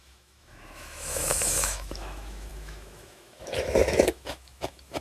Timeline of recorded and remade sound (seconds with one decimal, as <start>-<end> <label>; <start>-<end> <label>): 0.0-5.0 remade